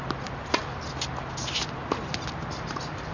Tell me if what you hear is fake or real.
real